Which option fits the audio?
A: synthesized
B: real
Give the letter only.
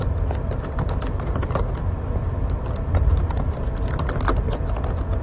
A